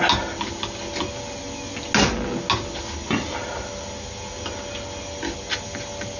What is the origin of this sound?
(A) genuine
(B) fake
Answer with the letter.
A